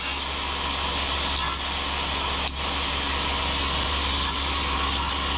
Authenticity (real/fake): real